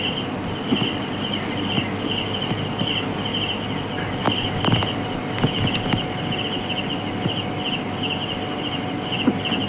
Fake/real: real